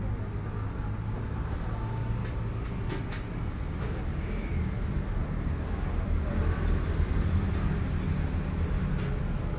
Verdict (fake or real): real